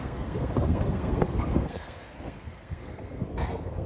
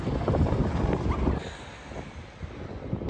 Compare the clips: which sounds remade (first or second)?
first